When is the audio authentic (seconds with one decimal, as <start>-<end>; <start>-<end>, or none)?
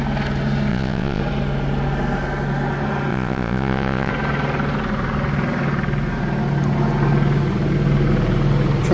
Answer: 0.0-0.7; 1.2-3.1; 4.1-8.9